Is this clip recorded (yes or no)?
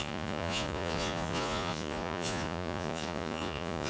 no